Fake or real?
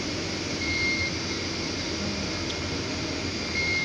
real